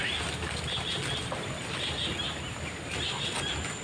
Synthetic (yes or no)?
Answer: no